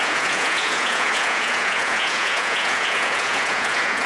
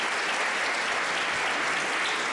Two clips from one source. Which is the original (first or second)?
second